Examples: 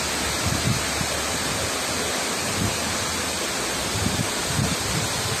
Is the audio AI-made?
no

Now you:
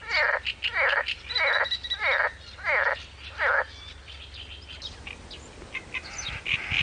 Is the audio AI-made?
no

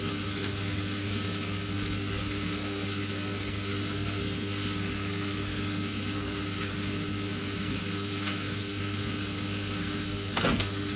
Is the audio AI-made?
yes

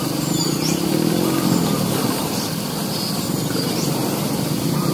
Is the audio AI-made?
no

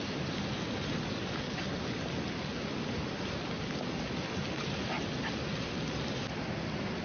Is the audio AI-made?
no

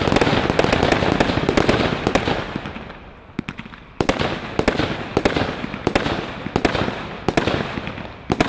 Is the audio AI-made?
no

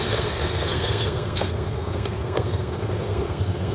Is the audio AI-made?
yes